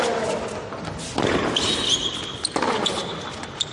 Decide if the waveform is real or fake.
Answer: real